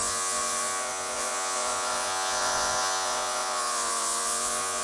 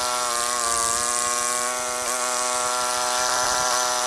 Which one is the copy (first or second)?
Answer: first